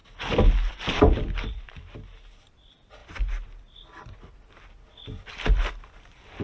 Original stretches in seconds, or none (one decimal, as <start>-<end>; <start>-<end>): 0.0-6.4

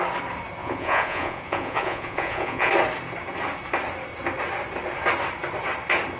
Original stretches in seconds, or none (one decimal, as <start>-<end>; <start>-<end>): 0.0-0.6; 2.7-6.2

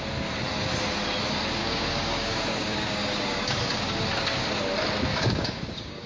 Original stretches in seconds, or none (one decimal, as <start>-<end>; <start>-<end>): 0.0-1.6; 4.0-5.1

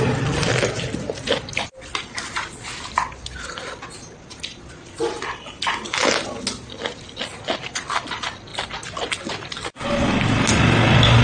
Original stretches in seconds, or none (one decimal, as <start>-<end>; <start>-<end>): 0.0-11.2

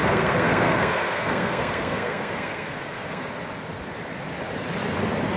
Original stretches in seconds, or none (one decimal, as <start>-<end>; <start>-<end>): 3.2-5.4

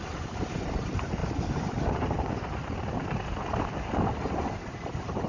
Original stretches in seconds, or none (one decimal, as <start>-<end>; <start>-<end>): 1.2-4.4

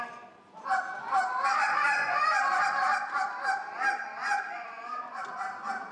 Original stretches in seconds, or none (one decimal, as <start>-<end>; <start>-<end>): 0.0-1.5; 2.4-4.2; 5.0-5.9

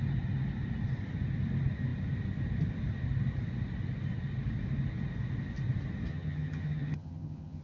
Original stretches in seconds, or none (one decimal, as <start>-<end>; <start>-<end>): 0.0-6.1